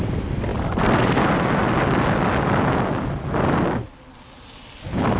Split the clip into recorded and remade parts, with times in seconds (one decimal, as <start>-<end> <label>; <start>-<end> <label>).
0.0-5.2 recorded